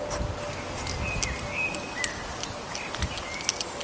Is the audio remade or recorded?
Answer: recorded